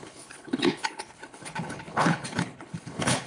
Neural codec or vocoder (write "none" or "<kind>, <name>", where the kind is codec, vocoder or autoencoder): codec, HILCodec